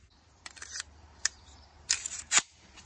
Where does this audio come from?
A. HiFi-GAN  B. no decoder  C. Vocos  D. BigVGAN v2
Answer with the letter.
D